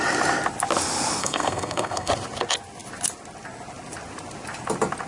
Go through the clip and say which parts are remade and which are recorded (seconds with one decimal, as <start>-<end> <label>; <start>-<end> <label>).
0.0-1.2 recorded; 1.2-2.1 remade; 2.1-5.1 recorded